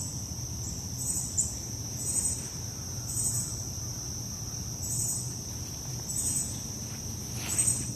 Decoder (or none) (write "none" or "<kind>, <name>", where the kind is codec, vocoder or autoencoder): vocoder, BigVGAN v2